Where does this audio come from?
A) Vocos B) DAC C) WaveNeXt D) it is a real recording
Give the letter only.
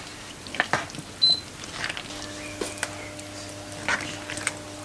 D